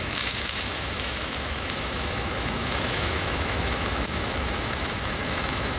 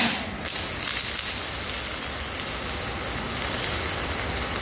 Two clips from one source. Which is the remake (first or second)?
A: first